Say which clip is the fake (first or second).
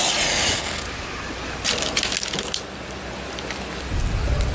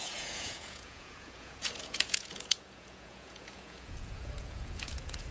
second